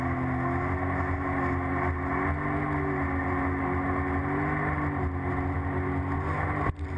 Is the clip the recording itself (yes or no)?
yes